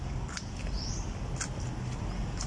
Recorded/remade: recorded